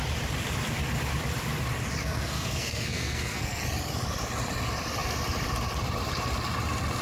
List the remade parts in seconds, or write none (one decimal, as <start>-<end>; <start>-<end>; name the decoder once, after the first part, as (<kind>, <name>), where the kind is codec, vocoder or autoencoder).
2.0-3.6 (codec, SNAC)

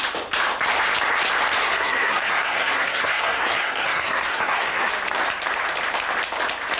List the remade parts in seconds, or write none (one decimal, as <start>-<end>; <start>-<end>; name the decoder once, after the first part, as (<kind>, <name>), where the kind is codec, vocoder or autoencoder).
1.6-4.9 (codec, SNAC)